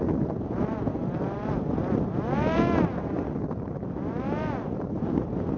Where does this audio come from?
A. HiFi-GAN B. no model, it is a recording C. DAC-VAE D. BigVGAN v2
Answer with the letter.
D